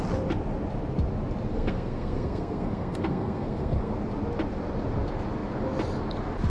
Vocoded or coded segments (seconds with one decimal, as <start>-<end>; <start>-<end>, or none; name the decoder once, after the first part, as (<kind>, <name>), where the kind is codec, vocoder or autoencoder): 1.5-3.9 (codec, SNAC)